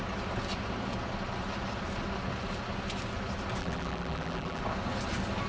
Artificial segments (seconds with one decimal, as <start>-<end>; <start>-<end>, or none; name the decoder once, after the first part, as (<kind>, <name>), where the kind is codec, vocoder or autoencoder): 3.6-4.6 (vocoder, BigVGAN v2)